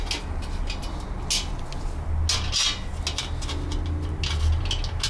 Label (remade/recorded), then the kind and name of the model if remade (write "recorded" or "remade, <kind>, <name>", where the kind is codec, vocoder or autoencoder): recorded